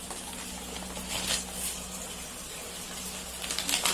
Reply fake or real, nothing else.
real